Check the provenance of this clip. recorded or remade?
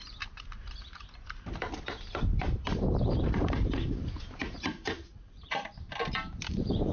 remade